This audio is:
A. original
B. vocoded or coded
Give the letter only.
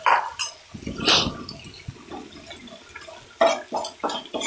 A